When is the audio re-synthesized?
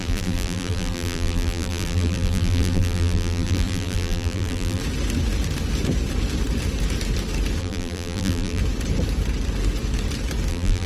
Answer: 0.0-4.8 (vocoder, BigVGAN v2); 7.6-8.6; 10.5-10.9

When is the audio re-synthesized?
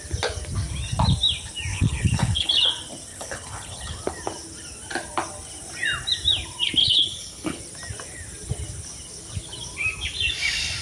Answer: 1.7-2.5 (codec, HILCodec); 3.1-4.0; 6.8-7.6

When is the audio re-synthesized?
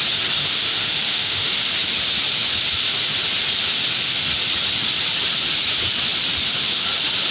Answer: 0.4-1.6 (autoencoder, DAC-VAE)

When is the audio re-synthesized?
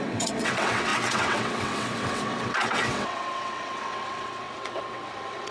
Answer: 0.0-5.5 (vocoder, WaveNeXt)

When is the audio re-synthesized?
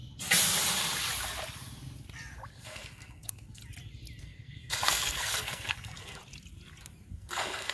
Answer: 2.5-3.6 (codec, SNAC); 4.2-6.2; 7.1-7.7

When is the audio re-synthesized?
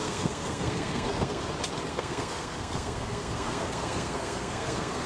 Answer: 0.0-1.4 (codec, SNAC); 1.9-5.1